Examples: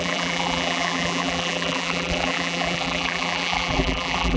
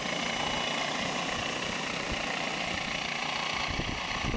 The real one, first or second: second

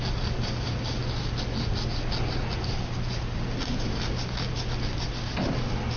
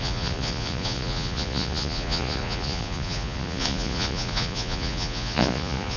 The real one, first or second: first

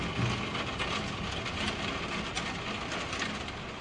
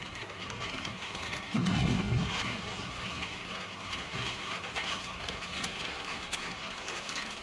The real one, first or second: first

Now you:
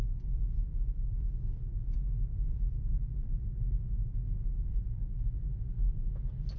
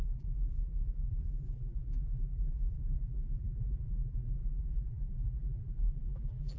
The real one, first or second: first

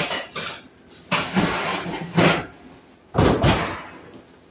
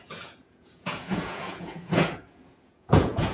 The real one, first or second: first